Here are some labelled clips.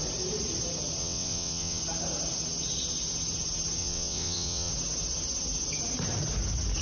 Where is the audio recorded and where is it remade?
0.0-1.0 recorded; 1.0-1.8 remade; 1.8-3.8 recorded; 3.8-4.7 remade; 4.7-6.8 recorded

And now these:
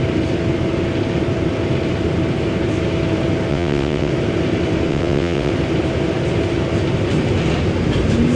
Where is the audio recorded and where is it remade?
0.0-3.5 recorded; 3.5-4.1 remade; 4.1-4.9 recorded; 4.9-5.5 remade; 5.5-8.4 recorded

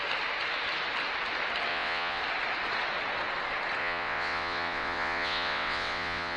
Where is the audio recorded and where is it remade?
0.0-1.7 recorded; 1.7-2.2 remade; 2.2-3.8 recorded; 3.8-6.4 remade

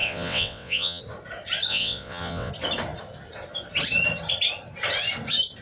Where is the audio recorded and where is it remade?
0.0-1.0 remade; 1.0-1.7 recorded; 1.7-2.5 remade; 2.5-5.6 recorded

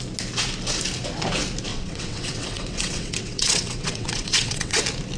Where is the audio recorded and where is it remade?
0.0-1.7 recorded; 1.7-4.8 remade; 4.8-5.2 recorded